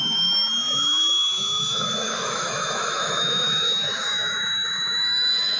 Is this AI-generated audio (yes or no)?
yes